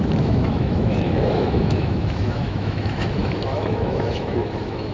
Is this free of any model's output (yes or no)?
no